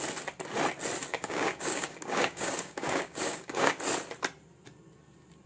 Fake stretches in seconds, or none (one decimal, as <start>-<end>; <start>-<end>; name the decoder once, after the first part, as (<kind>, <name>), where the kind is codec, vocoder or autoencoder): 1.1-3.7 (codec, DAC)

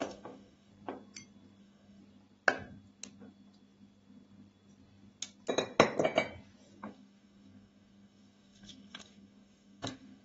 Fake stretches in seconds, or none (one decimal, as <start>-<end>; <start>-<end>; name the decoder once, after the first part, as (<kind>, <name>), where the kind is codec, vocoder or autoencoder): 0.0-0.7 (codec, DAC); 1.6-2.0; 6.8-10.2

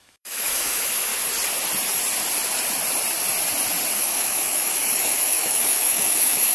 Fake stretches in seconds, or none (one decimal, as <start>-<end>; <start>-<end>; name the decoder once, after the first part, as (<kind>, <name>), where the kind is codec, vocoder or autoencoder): 0.0-1.1 (autoencoder, DAC-VAE); 3.9-6.5

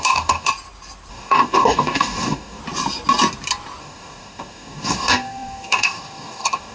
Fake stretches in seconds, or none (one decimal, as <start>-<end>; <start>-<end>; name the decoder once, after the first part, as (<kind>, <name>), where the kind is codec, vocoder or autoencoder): 0.0-0.5 (codec, DAC); 1.1-2.6; 3.8-6.7

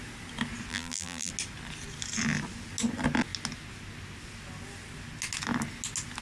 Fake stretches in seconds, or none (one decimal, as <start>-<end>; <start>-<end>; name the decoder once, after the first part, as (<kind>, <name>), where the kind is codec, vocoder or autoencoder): 0.7-1.3 (vocoder, BigVGAN v2)